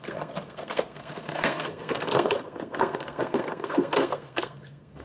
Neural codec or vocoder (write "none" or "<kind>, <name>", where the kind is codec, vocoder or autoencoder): codec, SNAC